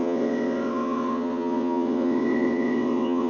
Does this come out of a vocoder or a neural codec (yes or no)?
yes